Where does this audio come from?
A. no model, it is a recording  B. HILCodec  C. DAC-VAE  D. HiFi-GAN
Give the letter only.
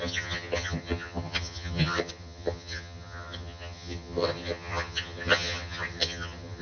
D